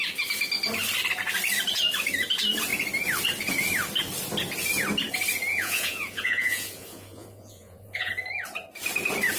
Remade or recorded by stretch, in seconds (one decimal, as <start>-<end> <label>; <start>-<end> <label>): 0.0-5.5 recorded; 5.5-8.1 remade; 8.1-9.4 recorded